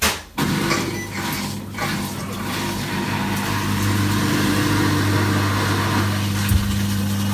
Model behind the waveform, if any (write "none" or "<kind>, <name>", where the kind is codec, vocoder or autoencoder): none